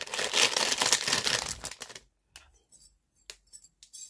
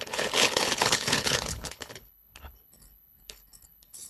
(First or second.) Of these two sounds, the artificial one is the second